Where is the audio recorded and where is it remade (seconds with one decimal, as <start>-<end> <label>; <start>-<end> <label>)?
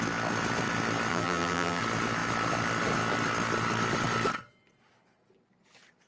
0.0-1.1 recorded; 1.1-1.8 remade; 1.8-6.1 recorded